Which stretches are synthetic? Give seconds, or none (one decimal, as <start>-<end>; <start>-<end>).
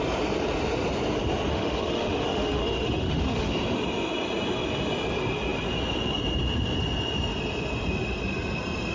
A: 1.5-3.5